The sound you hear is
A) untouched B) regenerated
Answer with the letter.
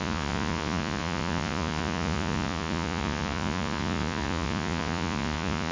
B